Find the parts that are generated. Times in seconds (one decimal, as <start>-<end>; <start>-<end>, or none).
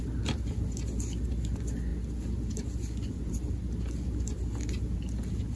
none